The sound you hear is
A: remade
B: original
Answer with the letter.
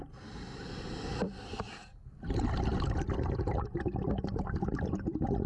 B